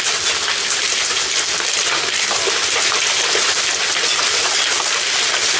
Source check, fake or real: real